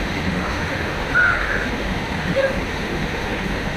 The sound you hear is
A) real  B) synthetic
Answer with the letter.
B